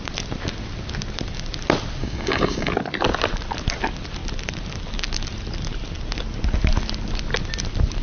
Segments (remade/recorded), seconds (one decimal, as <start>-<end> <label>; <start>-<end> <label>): 0.0-2.0 recorded; 2.0-2.7 remade; 2.7-8.0 recorded